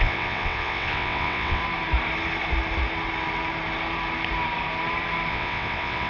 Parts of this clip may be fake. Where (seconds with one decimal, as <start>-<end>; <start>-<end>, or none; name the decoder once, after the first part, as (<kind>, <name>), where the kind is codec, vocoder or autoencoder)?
0.0-1.6 (vocoder, WaveNeXt); 5.3-6.1